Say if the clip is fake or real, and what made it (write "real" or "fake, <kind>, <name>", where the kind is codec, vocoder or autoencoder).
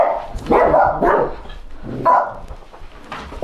real